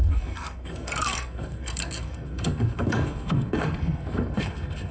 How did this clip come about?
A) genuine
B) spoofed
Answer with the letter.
B